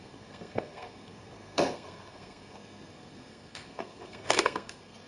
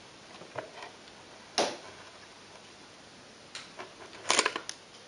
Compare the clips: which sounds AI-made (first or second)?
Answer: first